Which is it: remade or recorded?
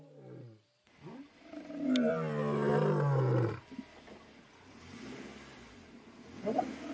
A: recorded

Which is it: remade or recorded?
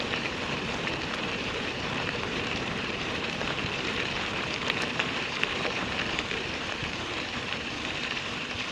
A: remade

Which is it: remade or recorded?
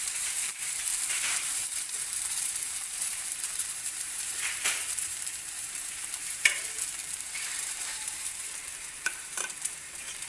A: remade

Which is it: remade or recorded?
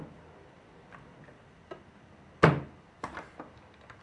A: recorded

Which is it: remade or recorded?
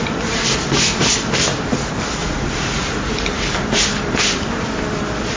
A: recorded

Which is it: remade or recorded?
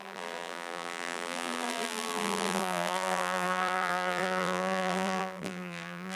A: remade